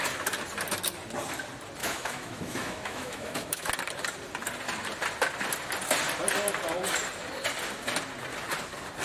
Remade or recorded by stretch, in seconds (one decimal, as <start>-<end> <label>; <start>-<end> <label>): 0.0-1.8 recorded; 1.8-3.7 remade; 3.7-9.0 recorded